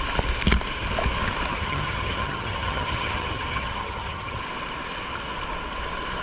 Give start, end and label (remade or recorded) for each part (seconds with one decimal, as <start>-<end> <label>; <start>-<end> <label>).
0.0-1.5 recorded; 1.5-4.4 remade; 4.4-6.2 recorded